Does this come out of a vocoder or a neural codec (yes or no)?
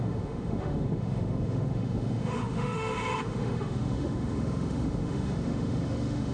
yes